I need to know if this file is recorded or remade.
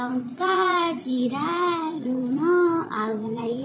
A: remade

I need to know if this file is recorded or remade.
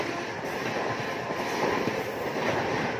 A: recorded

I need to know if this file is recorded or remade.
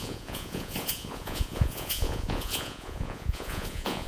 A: remade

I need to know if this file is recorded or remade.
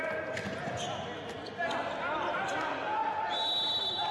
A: recorded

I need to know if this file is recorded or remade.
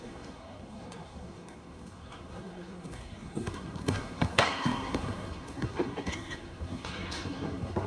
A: remade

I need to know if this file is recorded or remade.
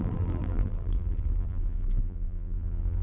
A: remade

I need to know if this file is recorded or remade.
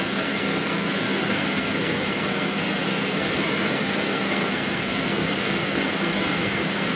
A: remade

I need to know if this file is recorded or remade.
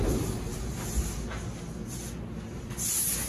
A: recorded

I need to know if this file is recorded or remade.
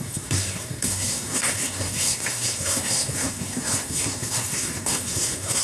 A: remade